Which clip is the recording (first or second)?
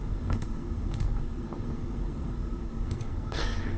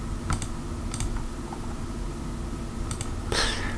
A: second